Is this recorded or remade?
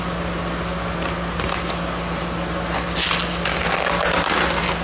recorded